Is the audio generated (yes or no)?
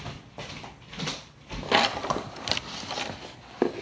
no